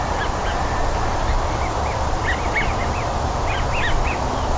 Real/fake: real